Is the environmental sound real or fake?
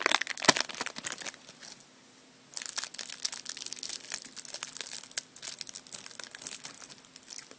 real